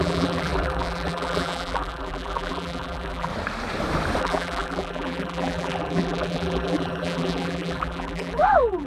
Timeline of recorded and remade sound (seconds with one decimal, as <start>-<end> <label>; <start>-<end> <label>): 0.0-3.3 remade; 3.3-4.2 recorded; 4.2-8.9 remade